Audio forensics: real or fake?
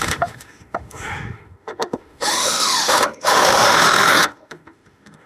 fake